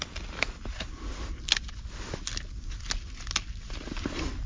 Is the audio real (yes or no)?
yes